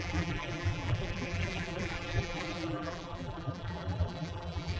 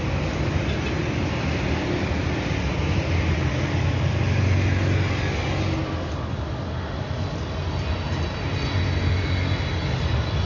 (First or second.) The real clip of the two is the second